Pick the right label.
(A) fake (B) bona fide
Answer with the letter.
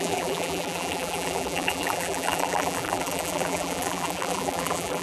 A